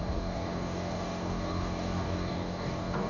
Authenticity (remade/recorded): remade